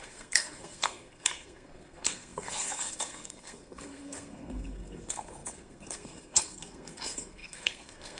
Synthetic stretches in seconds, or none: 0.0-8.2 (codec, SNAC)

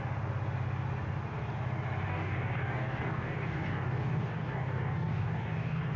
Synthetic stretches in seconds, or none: 2.1-6.0 (codec, DAC)

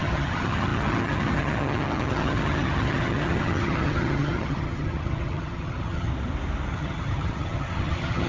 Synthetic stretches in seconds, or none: 0.0-6.1 (vocoder, HiFi-GAN); 6.7-8.3